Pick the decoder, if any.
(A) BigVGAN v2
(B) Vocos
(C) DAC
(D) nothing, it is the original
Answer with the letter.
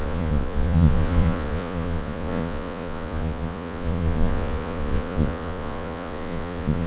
B